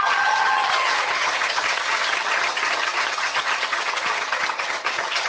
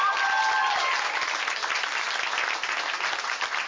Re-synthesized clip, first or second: first